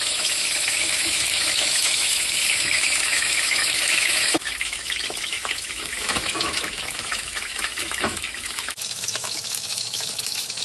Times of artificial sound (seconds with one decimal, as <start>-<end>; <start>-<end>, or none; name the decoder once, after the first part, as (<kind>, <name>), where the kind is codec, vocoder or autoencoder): 0.0-10.6 (autoencoder, DAC-VAE)

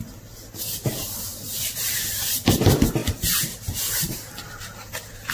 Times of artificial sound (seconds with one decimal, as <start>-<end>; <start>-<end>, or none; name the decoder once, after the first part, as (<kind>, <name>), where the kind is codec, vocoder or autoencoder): none

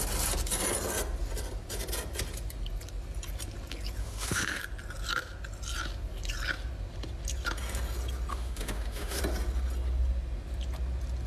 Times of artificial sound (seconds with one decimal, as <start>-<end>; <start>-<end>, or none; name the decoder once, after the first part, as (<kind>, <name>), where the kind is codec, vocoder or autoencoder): 4.0-4.6 (autoencoder, DAC-VAE); 8.3-9.2

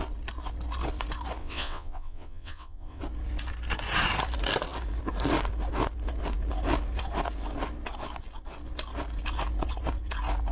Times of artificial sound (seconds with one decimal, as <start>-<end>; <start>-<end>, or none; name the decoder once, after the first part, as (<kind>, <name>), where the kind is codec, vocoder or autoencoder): 1.4-3.0 (vocoder, WaveNeXt)

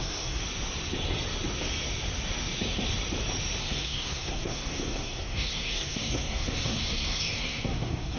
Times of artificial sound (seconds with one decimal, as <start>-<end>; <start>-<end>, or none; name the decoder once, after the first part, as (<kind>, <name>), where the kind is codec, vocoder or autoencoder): 0.0-0.4 (codec, SNAC); 3.6-8.2

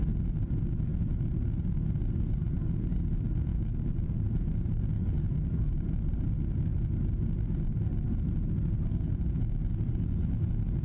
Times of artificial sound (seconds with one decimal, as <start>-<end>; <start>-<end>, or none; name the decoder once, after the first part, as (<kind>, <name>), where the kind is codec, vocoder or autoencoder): 3.5-4.8 (vocoder, BigVGAN v2)